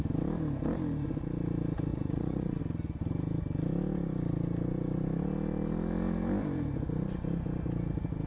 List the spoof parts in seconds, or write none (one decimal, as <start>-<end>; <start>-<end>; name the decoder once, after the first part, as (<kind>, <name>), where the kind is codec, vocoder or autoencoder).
1.9-2.6 (vocoder, Vocos)